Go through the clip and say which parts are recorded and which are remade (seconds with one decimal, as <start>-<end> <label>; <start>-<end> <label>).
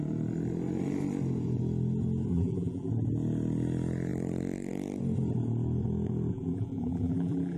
0.0-2.3 recorded; 2.3-2.9 remade; 2.9-6.3 recorded; 6.3-7.6 remade